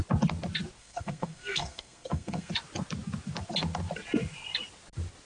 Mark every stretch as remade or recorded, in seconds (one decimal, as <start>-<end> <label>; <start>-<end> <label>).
0.0-0.8 recorded; 0.8-2.5 remade; 2.5-5.3 recorded